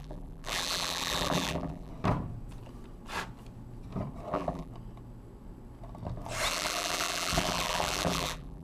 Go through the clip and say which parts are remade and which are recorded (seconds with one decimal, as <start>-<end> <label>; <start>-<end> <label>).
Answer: 0.0-1.9 remade; 1.9-4.3 recorded; 4.3-4.7 remade; 4.7-6.5 recorded; 6.5-8.6 remade